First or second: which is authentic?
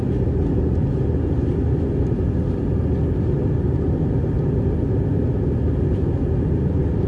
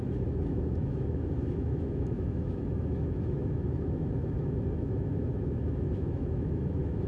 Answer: first